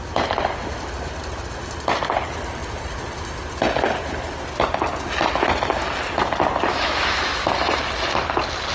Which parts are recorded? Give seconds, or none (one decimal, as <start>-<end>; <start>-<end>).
0.0-6.7; 7.8-8.7